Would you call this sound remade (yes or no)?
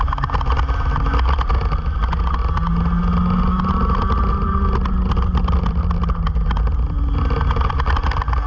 no